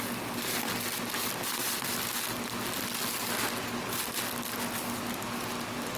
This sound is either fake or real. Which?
real